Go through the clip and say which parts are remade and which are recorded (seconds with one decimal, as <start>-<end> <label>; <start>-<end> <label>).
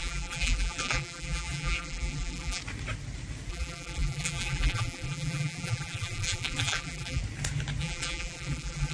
0.0-2.6 remade; 2.6-3.5 recorded; 3.5-7.2 remade; 7.2-7.8 recorded; 7.8-8.9 remade